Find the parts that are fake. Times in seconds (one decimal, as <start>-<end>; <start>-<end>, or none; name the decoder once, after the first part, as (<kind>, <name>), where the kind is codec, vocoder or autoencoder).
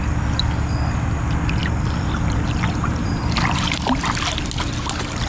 1.6-3.2 (vocoder, BigVGAN v2)